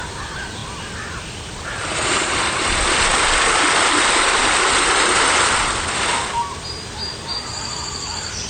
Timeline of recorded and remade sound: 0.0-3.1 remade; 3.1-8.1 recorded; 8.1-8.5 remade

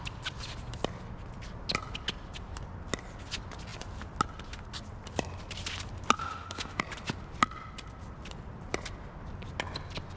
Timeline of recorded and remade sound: 0.0-6.2 recorded; 6.2-6.8 remade; 6.8-10.2 recorded

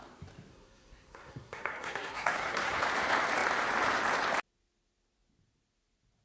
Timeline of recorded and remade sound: 0.0-0.5 recorded; 0.5-2.8 remade; 2.8-6.2 recorded

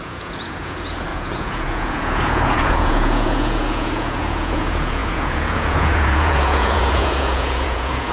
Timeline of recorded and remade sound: 0.0-8.1 remade

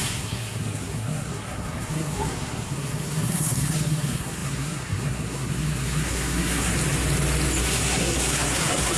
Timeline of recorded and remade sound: 0.0-6.7 remade; 6.7-7.6 recorded; 7.6-9.0 remade

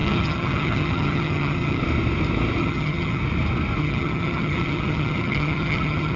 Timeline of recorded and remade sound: 0.0-1.8 remade; 1.8-2.6 recorded; 2.6-3.2 remade; 3.2-3.8 recorded; 3.8-6.2 remade